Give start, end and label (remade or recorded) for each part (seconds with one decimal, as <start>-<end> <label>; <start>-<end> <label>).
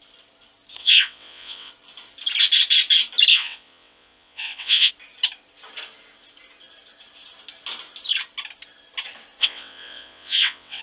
0.0-0.8 recorded; 0.8-1.7 remade; 1.7-3.3 recorded; 3.3-4.9 remade; 4.9-9.4 recorded; 9.4-10.8 remade